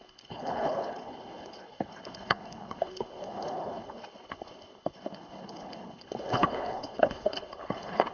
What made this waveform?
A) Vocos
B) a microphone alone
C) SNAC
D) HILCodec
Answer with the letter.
D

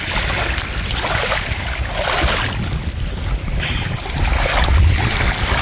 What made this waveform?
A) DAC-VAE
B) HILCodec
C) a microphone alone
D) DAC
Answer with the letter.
C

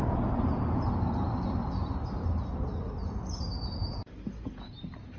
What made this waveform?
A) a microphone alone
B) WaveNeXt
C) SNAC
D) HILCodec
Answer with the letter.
A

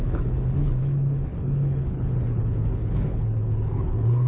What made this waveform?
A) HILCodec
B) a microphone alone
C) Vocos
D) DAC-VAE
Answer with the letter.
A